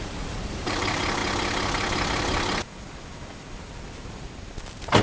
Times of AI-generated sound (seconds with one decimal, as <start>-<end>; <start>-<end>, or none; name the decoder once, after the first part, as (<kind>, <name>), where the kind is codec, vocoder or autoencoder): 0.0-1.2 (vocoder, BigVGAN v2); 4.0-5.0